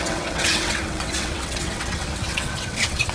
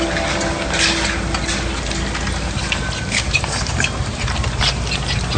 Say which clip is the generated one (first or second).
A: first